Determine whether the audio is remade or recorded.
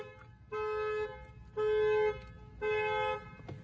recorded